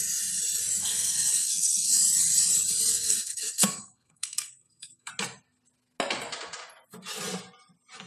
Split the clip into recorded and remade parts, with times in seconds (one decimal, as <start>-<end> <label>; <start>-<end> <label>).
0.0-0.8 recorded; 0.8-2.0 remade; 2.0-2.9 recorded; 2.9-5.1 remade; 5.1-8.1 recorded